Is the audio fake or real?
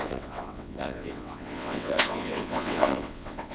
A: fake